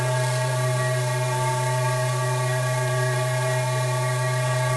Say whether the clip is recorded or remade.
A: remade